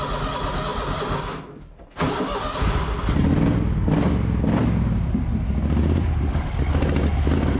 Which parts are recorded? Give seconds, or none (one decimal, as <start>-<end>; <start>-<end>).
0.0-7.6